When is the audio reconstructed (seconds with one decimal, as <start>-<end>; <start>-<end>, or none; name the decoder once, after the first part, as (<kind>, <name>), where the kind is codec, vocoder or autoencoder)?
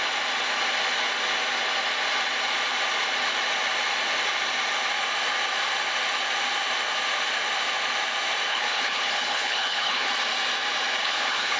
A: 8.5-10.1 (codec, HILCodec); 11.0-11.6